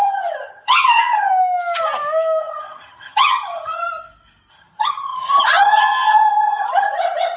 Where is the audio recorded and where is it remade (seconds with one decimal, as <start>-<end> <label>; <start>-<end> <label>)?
0.0-1.3 remade; 1.3-2.4 recorded; 2.4-3.8 remade; 3.8-4.5 recorded; 4.5-7.4 remade